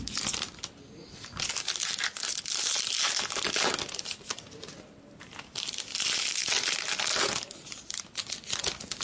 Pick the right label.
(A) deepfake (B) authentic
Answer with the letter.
B